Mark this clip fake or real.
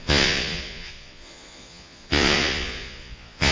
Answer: fake